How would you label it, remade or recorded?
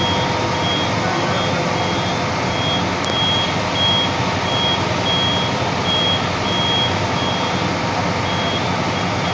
recorded